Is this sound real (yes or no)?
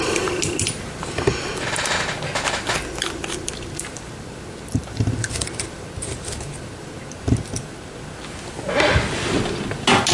yes